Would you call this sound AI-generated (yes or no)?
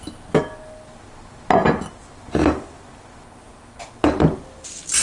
no